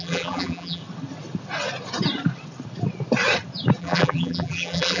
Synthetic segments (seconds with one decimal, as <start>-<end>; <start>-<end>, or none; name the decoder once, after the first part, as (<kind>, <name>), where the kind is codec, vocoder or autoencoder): 0.0-0.8 (vocoder, BigVGAN v2); 3.8-5.0